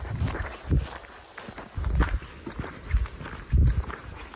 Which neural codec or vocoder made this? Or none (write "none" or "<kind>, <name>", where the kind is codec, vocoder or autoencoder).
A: none